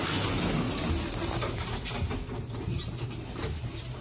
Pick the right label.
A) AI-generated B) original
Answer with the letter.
B